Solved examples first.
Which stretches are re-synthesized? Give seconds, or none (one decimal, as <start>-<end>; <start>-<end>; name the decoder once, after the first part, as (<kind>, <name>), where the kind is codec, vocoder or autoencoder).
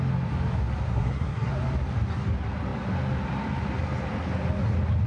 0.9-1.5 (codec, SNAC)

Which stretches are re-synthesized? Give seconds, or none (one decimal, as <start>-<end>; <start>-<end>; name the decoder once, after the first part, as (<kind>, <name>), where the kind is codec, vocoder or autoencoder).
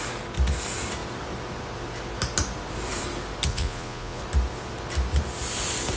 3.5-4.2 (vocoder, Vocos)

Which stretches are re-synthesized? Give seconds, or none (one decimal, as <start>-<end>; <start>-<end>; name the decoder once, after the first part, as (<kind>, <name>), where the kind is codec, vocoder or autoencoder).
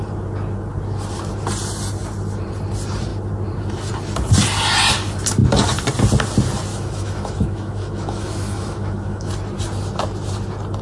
6.7-9.3 (autoencoder, DAC-VAE)